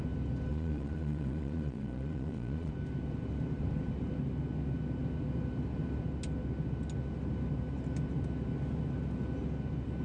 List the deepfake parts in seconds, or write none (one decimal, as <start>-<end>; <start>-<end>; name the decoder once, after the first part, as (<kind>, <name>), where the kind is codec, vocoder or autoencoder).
0.5-2.7 (vocoder, Vocos)